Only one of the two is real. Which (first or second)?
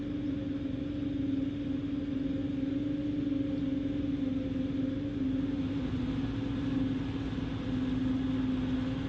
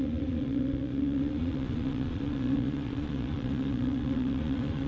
first